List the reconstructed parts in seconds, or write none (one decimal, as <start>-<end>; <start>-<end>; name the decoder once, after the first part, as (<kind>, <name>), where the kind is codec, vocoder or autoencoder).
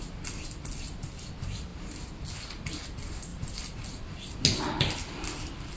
none